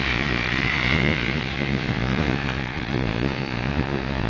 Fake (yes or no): yes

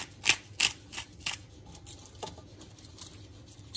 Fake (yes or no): no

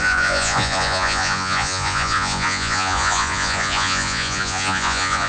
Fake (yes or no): yes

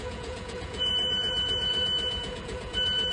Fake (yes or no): yes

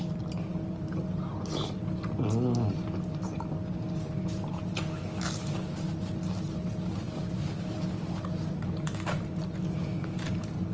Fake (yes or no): no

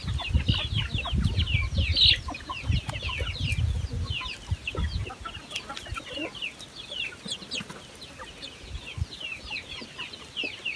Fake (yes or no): no